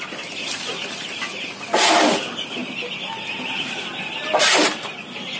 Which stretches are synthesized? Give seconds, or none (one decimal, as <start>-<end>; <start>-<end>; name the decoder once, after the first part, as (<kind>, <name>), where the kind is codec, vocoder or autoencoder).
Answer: none